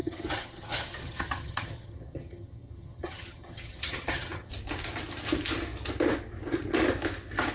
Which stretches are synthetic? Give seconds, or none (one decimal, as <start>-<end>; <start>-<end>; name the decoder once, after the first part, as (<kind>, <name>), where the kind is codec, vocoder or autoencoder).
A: 0.0-4.5 (vocoder, HiFi-GAN)